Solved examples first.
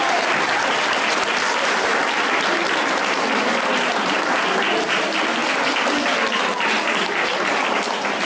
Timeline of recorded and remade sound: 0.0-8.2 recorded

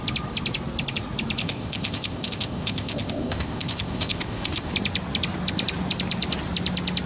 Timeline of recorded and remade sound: 0.0-1.4 recorded; 1.4-4.7 remade; 4.7-7.1 recorded

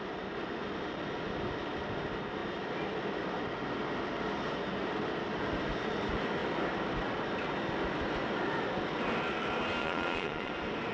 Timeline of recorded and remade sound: 0.0-9.8 recorded; 9.8-10.5 remade; 10.5-10.9 recorded

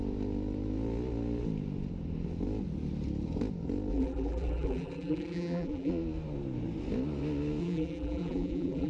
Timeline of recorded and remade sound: 0.0-3.9 recorded; 3.9-5.9 remade; 5.9-7.6 recorded; 7.6-8.9 remade

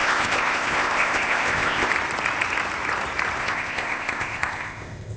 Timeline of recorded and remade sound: 0.0-1.9 remade; 1.9-3.4 recorded; 3.4-5.2 remade

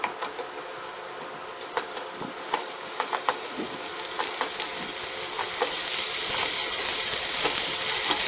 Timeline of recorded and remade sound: 0.0-2.6 recorded; 2.6-3.9 remade; 3.9-8.3 recorded

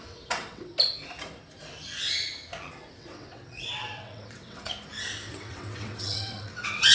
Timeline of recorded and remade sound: 0.0-0.7 remade; 0.7-2.9 recorded; 2.9-4.7 remade; 4.7-5.3 recorded; 5.3-6.9 remade

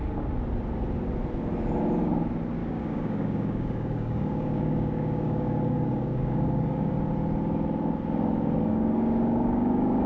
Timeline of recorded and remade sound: 0.0-2.6 recorded; 2.6-6.9 remade; 6.9-8.7 recorded; 8.7-10.1 remade